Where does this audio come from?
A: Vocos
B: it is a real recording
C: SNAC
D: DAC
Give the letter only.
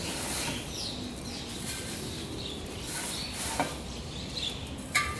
B